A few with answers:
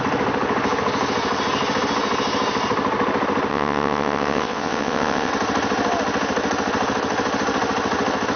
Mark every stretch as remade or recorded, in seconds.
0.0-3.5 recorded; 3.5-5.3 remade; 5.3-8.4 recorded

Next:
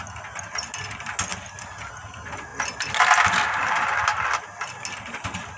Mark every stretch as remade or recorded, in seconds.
0.0-5.6 recorded

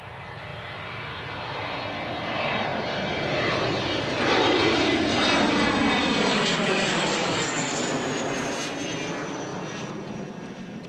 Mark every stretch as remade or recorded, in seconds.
0.0-6.3 recorded; 6.3-7.8 remade; 7.8-10.9 recorded